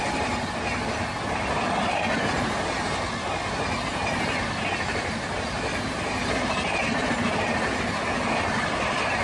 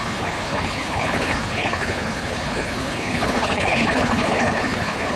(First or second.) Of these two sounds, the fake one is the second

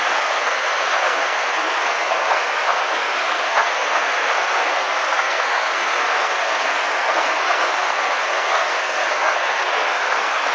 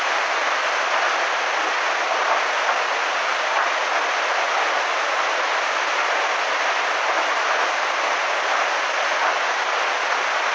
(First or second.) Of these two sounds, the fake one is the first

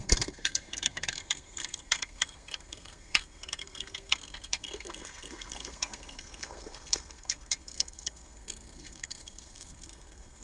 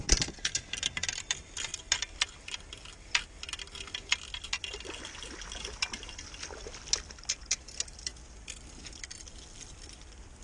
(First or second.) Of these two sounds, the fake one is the first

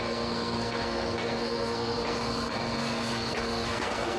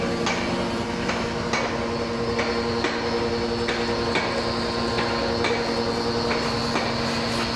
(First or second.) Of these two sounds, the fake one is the first